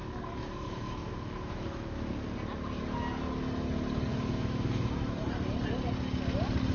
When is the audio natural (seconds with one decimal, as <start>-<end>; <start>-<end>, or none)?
2.1-4.1; 4.8-6.7